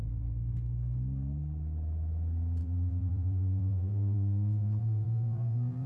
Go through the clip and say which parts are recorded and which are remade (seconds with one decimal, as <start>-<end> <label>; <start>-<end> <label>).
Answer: 0.0-2.6 recorded; 2.6-5.9 remade